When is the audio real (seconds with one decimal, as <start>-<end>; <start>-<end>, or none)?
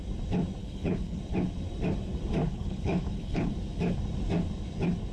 0.0-0.6; 1.2-2.4; 3.5-5.1